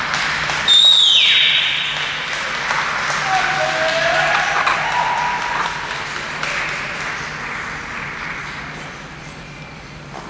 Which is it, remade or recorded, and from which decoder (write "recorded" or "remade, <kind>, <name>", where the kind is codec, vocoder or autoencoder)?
recorded